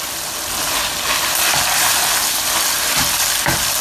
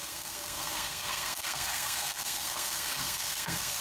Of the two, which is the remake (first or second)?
second